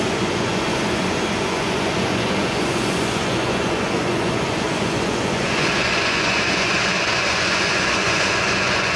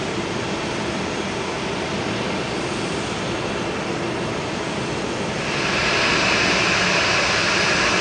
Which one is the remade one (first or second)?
first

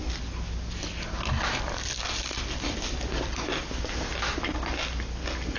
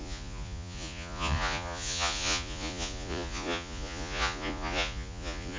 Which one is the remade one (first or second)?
second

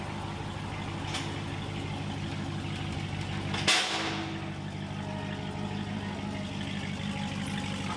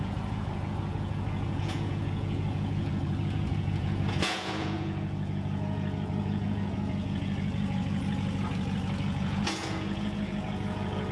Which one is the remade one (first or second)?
second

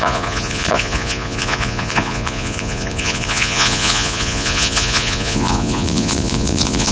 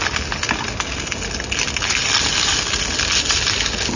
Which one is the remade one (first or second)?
first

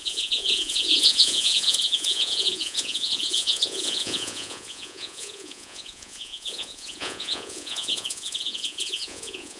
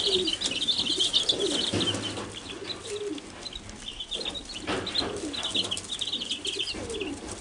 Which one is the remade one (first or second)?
first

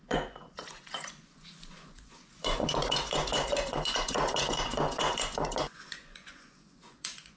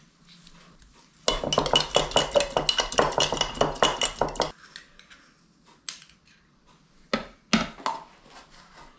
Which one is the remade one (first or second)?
first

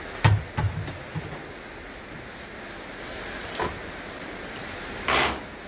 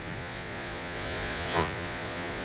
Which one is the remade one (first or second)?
second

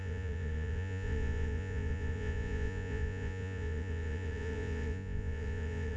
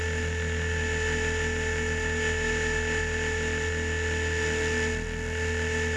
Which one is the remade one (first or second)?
first